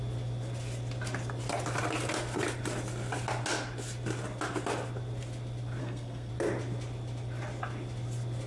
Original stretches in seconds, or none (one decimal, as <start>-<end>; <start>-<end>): 0.0-5.8; 6.3-8.5